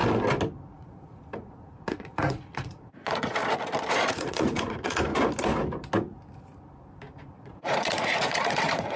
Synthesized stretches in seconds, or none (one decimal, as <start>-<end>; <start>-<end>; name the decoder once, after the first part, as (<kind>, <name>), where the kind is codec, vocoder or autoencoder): 0.7-3.4 (vocoder, Vocos); 3.9-5.1; 7.4-9.0